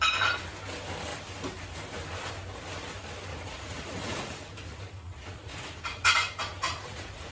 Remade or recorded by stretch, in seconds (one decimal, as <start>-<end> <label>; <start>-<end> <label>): 0.0-3.3 recorded; 3.3-6.1 remade; 6.1-6.6 recorded; 6.6-7.3 remade